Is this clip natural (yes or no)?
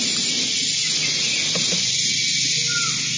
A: yes